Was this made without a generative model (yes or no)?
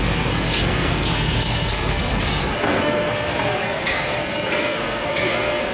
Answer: no